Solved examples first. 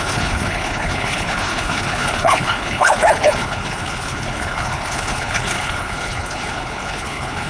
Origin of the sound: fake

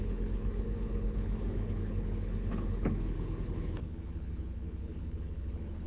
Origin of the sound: fake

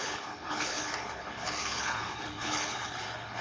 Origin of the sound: fake